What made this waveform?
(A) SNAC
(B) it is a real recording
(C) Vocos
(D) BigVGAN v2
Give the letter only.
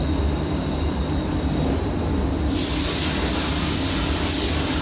B